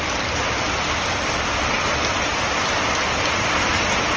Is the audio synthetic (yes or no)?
no